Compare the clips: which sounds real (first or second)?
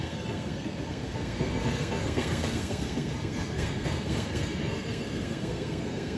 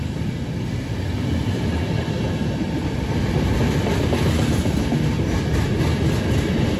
second